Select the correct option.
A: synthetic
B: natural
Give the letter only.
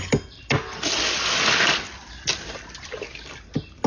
B